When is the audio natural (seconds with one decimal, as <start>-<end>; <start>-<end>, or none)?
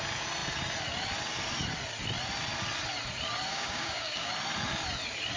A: 0.0-3.5; 4.3-5.4